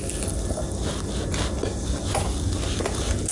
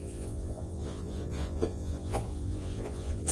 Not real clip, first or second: second